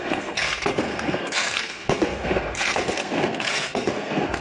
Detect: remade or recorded remade